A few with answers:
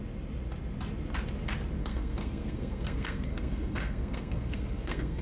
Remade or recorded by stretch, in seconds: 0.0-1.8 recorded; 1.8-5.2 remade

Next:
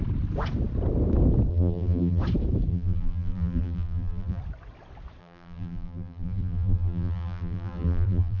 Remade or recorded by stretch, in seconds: 0.0-1.5 recorded; 1.5-2.2 remade; 2.2-2.7 recorded; 2.7-4.4 remade; 4.4-5.2 recorded; 5.2-8.4 remade

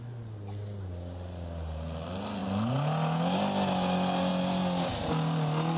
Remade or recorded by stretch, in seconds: 0.0-5.8 recorded

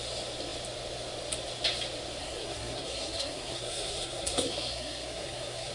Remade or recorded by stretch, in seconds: 0.0-2.2 recorded; 2.2-5.7 remade

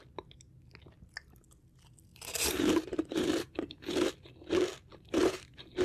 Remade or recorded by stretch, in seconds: 0.0-2.1 recorded; 2.1-4.1 remade; 4.1-4.9 recorded; 4.9-5.8 remade